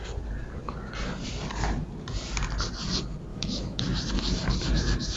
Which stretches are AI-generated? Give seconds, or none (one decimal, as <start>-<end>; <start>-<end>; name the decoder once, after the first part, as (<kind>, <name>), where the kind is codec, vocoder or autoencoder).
3.3-3.8 (autoencoder, DAC-VAE)